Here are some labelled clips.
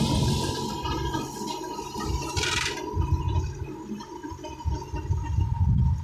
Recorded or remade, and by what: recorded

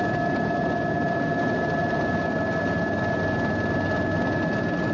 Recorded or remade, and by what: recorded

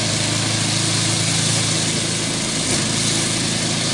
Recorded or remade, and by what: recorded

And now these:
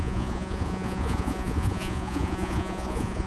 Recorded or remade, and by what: remade, vocoder, Vocos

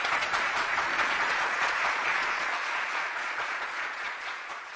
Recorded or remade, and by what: remade, vocoder, Vocos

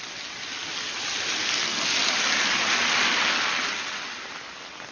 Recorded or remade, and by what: recorded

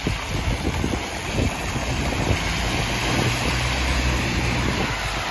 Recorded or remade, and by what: recorded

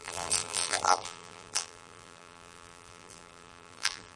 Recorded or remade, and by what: remade, vocoder, BigVGAN v2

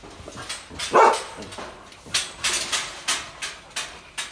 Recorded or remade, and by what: recorded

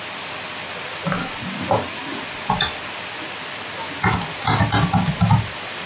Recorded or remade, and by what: recorded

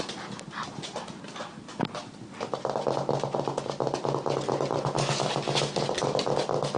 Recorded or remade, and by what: recorded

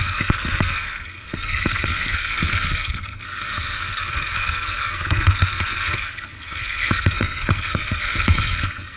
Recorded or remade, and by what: remade, codec, SNAC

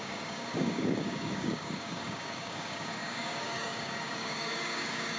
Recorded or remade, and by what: remade, codec, DAC